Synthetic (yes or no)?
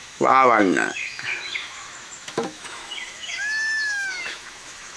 yes